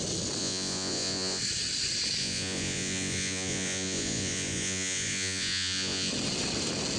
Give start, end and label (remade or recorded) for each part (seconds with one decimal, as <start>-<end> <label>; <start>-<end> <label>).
0.0-0.4 recorded; 0.4-1.4 remade; 1.4-2.2 recorded; 2.2-6.1 remade; 6.1-7.0 recorded